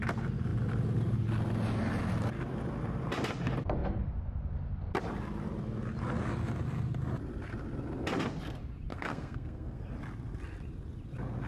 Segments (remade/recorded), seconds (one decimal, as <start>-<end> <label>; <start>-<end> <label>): 0.0-8.9 recorded; 8.9-9.9 remade; 9.9-11.5 recorded